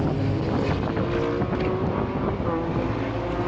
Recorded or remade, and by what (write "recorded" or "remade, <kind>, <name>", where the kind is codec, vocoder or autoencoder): recorded